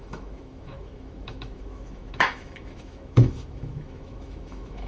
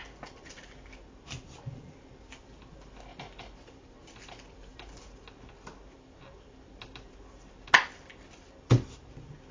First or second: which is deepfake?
first